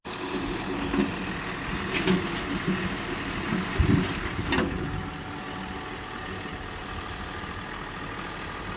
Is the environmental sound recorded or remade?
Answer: recorded